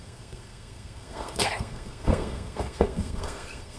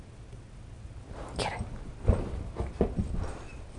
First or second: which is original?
second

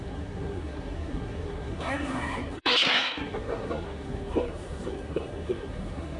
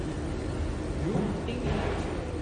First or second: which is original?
second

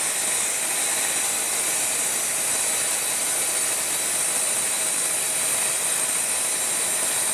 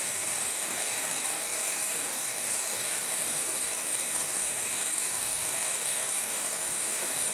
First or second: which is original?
first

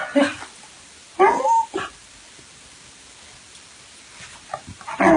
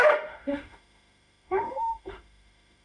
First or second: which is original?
first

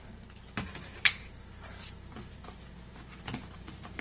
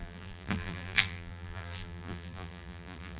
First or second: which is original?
first